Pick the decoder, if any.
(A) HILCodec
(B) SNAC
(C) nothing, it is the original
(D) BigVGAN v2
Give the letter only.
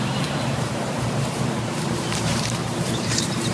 D